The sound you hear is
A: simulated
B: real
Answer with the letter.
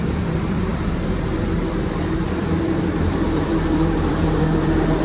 A